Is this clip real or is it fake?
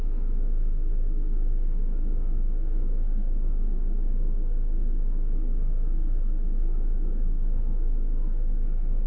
fake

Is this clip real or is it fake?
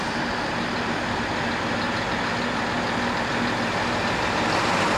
real